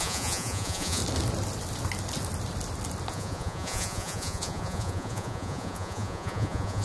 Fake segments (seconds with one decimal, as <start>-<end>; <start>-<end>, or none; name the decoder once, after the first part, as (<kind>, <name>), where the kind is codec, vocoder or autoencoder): 0.0-1.0 (vocoder, Vocos); 3.1-6.8